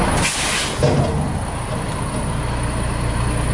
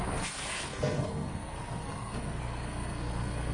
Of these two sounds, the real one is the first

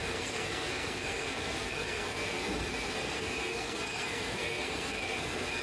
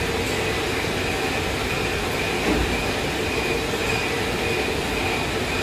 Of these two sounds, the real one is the second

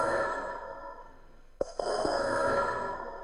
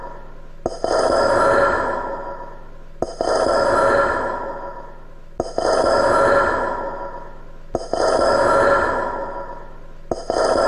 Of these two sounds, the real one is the second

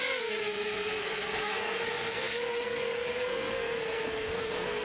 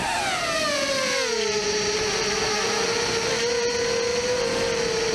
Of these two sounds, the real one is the second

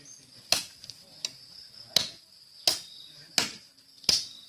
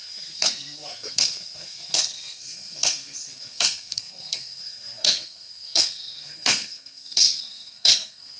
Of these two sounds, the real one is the first